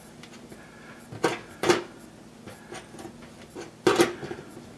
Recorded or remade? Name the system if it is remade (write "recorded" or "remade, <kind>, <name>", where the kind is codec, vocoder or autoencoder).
recorded